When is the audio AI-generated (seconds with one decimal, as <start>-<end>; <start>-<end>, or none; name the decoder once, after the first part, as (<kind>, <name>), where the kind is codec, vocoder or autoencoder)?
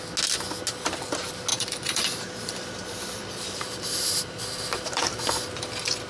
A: 1.5-5.2 (vocoder, BigVGAN v2)